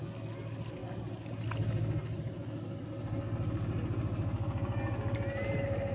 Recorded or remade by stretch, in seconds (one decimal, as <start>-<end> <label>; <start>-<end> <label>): 0.0-5.9 recorded